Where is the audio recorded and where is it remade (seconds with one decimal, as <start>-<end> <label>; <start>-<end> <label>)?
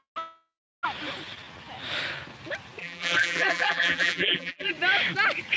0.0-2.8 recorded; 2.8-4.7 remade; 4.7-5.6 recorded